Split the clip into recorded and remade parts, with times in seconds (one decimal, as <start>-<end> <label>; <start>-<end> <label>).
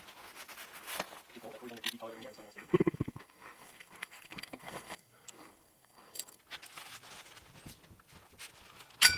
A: 0.0-2.1 recorded; 2.1-6.4 remade; 6.4-9.2 recorded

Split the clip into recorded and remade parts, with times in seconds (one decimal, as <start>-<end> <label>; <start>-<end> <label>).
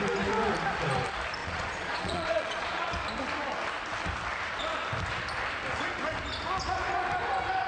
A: 0.0-1.4 recorded; 1.4-2.9 remade; 2.9-7.7 recorded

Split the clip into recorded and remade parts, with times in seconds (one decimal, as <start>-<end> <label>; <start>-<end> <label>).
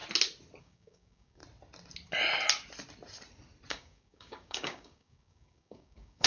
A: 0.0-0.6 recorded; 0.6-1.4 remade; 1.4-3.7 recorded; 3.7-6.3 remade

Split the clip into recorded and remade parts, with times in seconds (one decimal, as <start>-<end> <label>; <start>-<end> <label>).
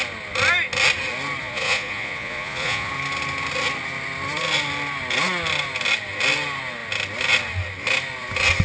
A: 0.0-1.4 recorded; 1.4-2.9 remade; 2.9-8.6 recorded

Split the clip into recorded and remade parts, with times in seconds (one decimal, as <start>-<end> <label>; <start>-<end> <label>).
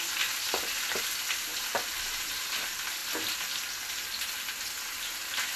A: 0.0-1.5 recorded; 1.5-2.2 remade; 2.2-5.6 recorded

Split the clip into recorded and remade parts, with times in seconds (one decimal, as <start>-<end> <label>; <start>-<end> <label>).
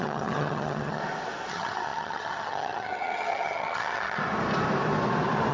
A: 0.0-1.0 remade; 1.0-1.5 recorded; 1.5-4.2 remade; 4.2-5.5 recorded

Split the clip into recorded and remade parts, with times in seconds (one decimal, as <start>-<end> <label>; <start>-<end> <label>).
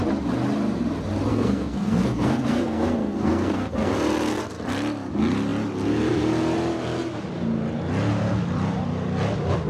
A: 0.0-1.3 recorded; 1.3-3.9 remade; 3.9-9.7 recorded